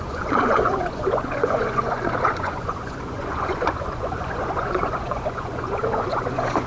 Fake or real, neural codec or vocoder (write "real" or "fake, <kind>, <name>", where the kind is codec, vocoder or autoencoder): fake, vocoder, Vocos